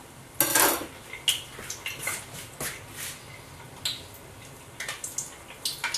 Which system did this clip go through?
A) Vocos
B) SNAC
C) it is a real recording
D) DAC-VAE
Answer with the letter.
C